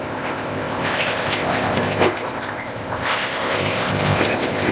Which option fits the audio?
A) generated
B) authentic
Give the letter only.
A